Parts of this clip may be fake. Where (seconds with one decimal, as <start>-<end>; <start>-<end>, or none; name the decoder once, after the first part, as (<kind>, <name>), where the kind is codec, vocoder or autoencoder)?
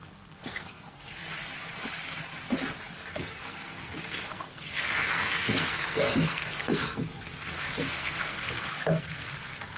0.0-1.2 (codec, SNAC); 3.1-9.8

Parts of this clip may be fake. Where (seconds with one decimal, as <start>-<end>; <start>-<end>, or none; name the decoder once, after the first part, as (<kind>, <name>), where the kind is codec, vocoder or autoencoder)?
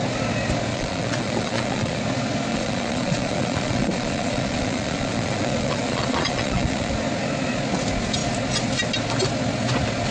0.7-2.0 (vocoder, Vocos); 2.5-6.9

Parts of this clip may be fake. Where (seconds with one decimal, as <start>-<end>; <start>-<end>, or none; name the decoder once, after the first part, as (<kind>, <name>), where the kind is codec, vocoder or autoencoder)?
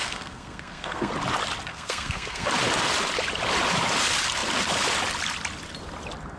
0.0-1.1 (codec, SNAC); 1.7-2.5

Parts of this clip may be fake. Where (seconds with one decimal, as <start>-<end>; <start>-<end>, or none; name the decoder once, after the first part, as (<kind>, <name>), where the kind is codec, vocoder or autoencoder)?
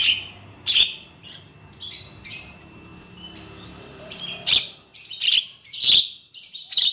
0.0-1.5 (vocoder, BigVGAN v2); 2.2-2.9; 6.3-6.9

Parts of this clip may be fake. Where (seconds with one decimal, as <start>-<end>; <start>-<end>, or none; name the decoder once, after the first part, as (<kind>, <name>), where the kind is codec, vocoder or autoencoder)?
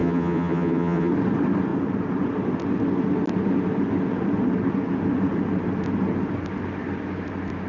0.0-1.1 (vocoder, HiFi-GAN)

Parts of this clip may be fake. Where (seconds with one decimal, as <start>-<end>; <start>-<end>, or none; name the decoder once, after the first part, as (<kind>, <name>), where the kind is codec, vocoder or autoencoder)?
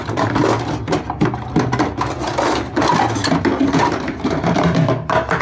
0.0-0.4 (vocoder, BigVGAN v2); 3.6-5.4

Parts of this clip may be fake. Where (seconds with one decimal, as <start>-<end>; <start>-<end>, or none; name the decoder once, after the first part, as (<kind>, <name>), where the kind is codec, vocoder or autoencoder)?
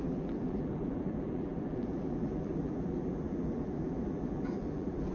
0.0-5.1 (vocoder, BigVGAN v2)